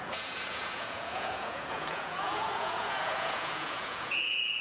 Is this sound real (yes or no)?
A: no